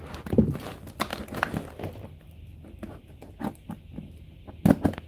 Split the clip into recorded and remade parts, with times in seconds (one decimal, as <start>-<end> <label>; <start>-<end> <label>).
0.0-5.1 recorded